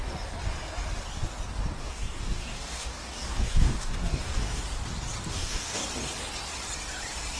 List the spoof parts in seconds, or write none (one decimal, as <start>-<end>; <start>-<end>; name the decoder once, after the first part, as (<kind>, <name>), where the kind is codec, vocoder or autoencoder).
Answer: 1.8-4.6 (codec, DAC); 5.3-5.8